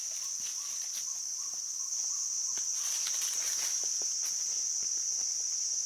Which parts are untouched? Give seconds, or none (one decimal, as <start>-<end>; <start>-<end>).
0.0-0.5; 1.0-5.9